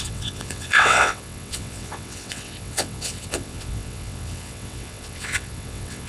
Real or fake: fake